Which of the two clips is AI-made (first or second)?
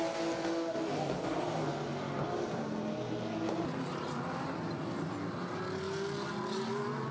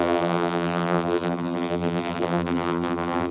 second